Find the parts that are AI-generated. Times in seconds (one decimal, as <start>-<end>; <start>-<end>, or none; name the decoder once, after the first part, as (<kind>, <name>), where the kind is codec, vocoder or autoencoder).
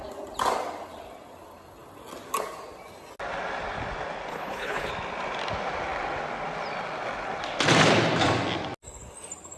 4.3-4.9 (codec, HILCodec)